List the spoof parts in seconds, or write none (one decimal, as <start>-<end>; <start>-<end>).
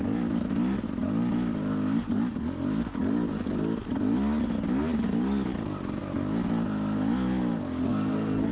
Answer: 7.9-8.5